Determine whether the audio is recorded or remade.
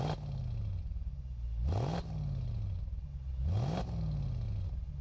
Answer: recorded